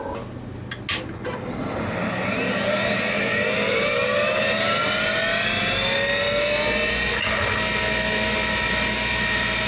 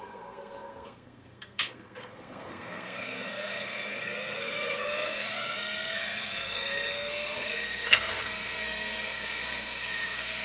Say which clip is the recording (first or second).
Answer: first